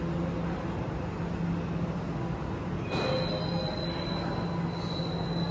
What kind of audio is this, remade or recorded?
recorded